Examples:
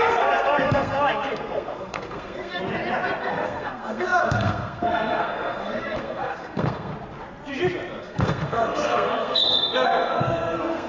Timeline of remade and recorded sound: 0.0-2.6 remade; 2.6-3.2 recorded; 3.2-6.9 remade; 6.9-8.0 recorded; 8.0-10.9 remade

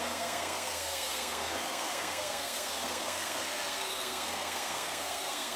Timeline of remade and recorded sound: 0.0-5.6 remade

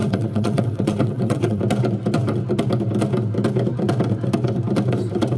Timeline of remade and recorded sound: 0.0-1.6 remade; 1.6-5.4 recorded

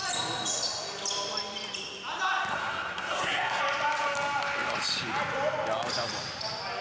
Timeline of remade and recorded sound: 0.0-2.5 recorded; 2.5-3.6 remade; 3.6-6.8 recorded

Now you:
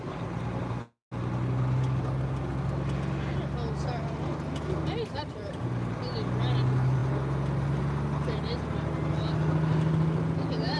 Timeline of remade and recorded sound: 0.0-10.8 recorded